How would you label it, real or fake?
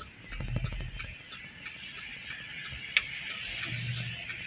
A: real